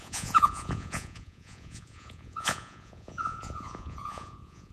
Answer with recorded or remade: remade